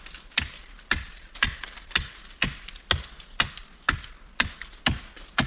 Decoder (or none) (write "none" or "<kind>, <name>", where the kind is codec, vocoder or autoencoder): none